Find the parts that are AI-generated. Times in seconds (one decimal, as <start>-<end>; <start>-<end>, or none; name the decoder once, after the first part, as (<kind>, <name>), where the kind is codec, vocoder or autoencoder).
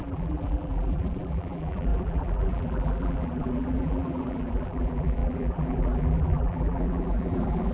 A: 0.0-7.7 (vocoder, BigVGAN v2)